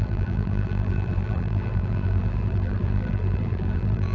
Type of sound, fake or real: fake